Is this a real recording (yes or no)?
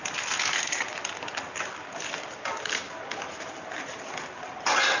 yes